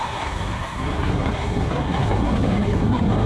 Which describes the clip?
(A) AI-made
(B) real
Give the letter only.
A